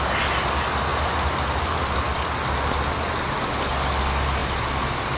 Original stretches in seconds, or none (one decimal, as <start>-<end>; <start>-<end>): 0.0-5.2